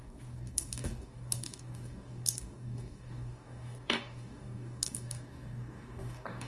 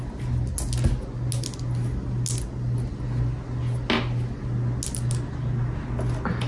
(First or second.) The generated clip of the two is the first